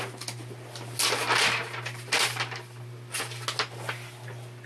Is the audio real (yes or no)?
yes